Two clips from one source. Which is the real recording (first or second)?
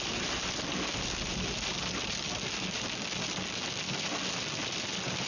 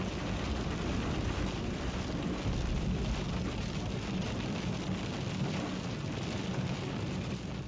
first